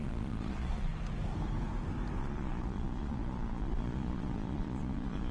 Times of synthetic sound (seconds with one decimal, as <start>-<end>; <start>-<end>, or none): 0.0-0.9; 2.2-5.3